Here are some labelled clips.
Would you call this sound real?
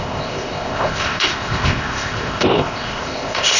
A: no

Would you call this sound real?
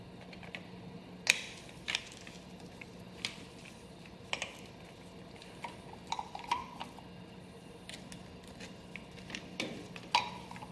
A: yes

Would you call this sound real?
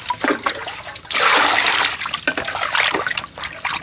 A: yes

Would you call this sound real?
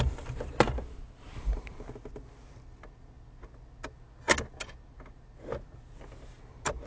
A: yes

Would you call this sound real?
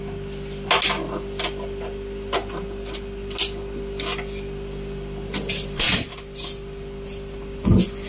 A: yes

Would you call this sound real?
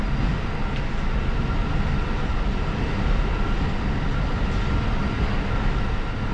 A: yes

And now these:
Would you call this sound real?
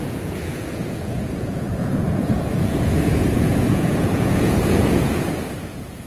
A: no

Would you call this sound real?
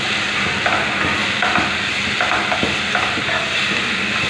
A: yes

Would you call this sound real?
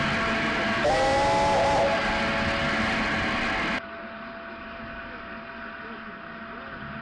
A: yes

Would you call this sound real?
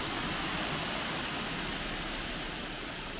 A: yes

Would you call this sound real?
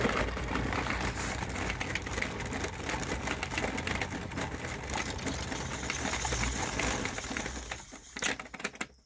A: yes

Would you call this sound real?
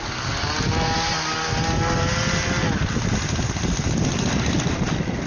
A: yes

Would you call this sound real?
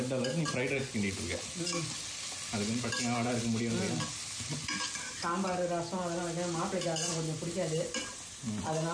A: yes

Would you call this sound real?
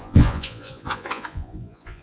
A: no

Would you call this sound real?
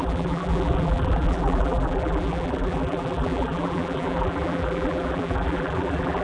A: no